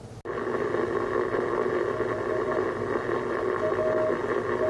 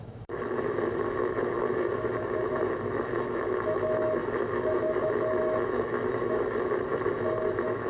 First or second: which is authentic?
first